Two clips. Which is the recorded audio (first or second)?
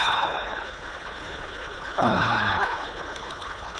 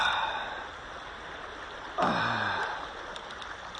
second